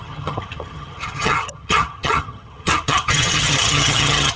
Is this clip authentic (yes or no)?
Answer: no